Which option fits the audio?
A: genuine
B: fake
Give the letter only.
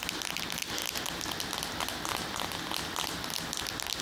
A